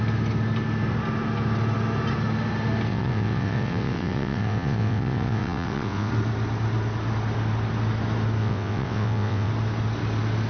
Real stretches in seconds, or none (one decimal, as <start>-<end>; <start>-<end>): 0.0-2.9; 6.1-8.4; 9.5-10.5